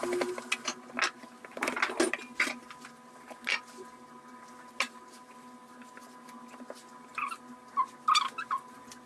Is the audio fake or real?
real